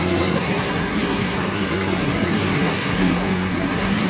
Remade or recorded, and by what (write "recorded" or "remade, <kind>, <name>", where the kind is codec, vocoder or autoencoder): remade, codec, SNAC